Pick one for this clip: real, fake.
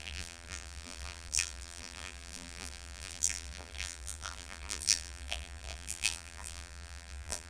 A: fake